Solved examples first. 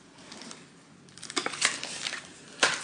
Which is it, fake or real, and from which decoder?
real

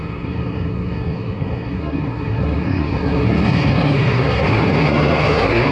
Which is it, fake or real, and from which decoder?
fake, codec, SNAC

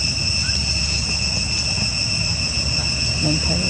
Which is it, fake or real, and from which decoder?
real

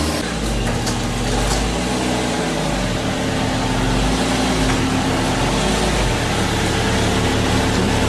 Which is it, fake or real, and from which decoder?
real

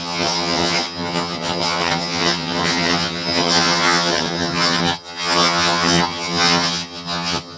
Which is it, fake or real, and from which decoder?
fake, vocoder, HiFi-GAN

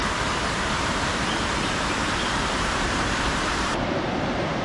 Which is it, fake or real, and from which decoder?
fake, vocoder, BigVGAN v2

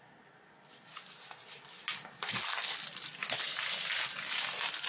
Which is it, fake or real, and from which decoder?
real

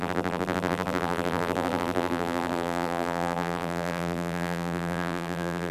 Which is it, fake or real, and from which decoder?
fake, vocoder, BigVGAN v2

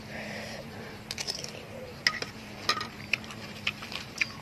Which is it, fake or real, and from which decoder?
real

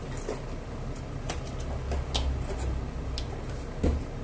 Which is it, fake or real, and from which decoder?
real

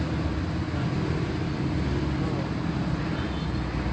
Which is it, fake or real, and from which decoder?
real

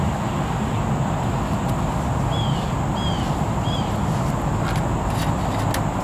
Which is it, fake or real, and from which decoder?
real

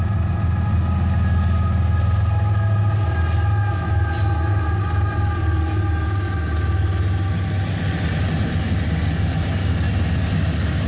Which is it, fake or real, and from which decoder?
real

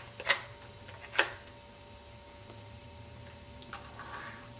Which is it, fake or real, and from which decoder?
real